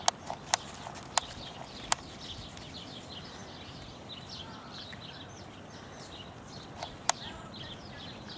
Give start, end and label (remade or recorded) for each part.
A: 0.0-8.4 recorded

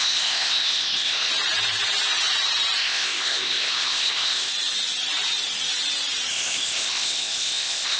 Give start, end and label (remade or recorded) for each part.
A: 0.0-1.3 remade; 1.3-2.8 recorded; 2.8-4.5 remade; 4.5-6.3 recorded; 6.3-8.0 remade